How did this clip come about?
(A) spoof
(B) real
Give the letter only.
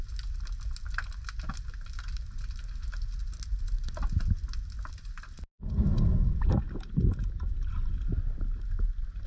B